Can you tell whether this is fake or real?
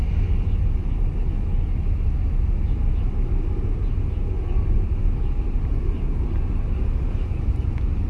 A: real